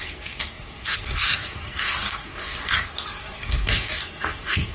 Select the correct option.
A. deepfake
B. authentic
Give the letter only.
A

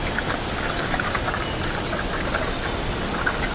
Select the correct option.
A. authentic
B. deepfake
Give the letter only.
A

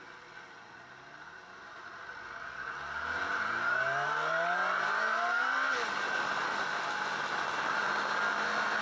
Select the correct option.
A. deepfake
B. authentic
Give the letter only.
B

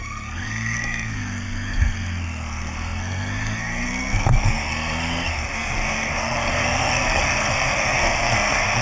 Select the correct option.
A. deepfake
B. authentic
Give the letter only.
A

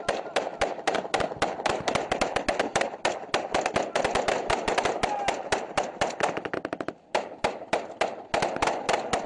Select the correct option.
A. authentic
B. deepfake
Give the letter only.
A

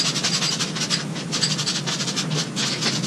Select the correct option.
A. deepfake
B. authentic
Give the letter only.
B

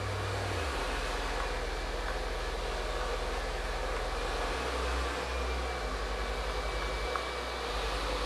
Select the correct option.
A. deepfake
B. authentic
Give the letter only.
B